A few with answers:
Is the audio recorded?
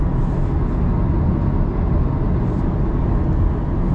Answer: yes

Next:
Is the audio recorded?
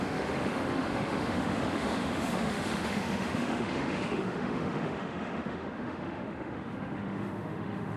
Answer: no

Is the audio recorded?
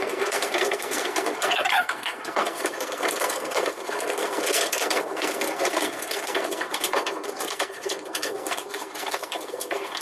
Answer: no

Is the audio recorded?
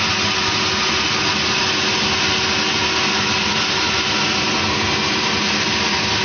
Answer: yes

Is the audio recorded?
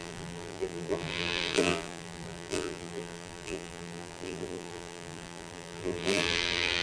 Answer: no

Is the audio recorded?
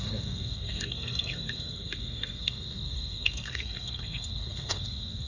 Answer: no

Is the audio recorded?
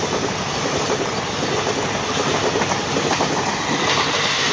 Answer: yes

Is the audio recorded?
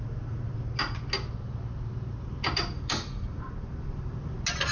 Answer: yes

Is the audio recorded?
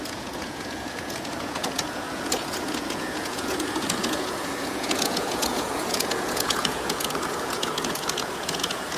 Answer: no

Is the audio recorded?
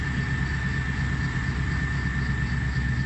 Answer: yes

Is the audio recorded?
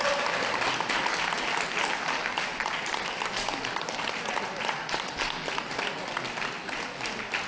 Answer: yes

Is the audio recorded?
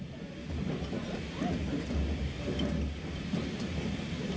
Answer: yes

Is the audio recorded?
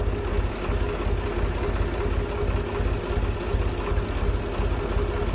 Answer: yes